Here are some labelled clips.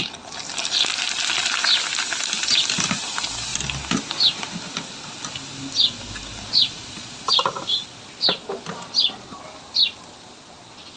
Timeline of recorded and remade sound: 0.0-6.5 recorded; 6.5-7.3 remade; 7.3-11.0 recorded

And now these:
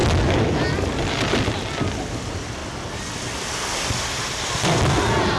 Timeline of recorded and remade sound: 0.0-5.4 recorded

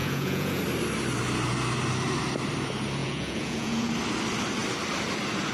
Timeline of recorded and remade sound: 0.0-0.6 remade; 0.6-3.0 recorded; 3.0-3.9 remade; 3.9-5.5 recorded

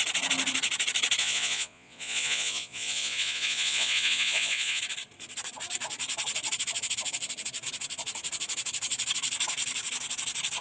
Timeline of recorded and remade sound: 0.0-1.2 recorded; 1.2-4.8 remade; 4.8-10.6 recorded

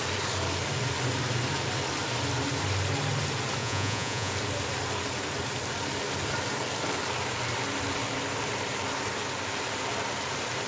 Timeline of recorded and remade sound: 0.0-3.6 recorded; 3.6-4.3 remade; 4.3-10.7 recorded